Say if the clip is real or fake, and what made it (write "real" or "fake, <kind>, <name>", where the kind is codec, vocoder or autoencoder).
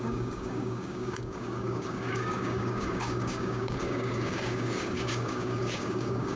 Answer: fake, codec, DAC